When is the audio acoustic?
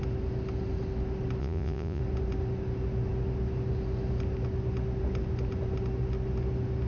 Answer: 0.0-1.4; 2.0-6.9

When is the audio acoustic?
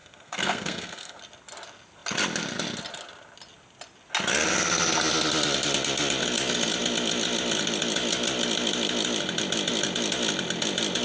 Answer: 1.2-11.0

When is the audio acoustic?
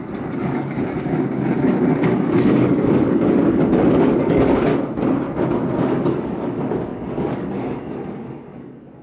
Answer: 4.7-5.8